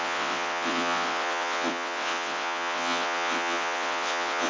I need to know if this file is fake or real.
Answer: fake